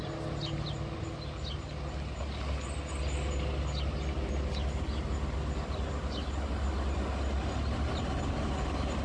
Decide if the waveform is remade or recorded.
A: recorded